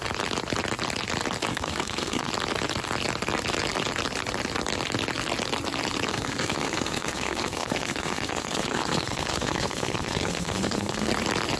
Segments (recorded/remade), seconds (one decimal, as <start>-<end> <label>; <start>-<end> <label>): 0.0-1.5 recorded; 1.5-2.3 remade; 2.3-6.1 recorded; 6.1-11.1 remade; 11.1-11.6 recorded